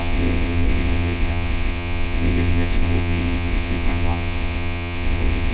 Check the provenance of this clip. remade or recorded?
remade